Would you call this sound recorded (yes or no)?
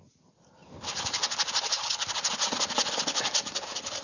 yes